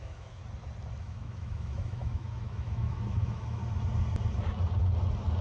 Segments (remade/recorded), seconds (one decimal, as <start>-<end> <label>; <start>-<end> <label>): 0.0-0.4 remade; 0.4-1.0 recorded; 1.0-3.6 remade; 3.6-5.4 recorded